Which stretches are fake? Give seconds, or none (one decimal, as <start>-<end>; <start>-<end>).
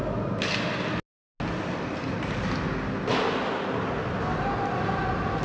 none